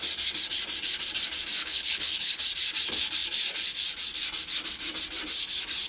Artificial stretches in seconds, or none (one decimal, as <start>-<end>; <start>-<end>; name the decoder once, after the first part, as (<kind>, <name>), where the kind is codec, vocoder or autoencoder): 1.6-2.4 (codec, HILCodec)